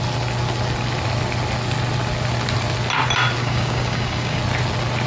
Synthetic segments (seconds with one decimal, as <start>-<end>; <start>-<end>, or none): 3.4-4.4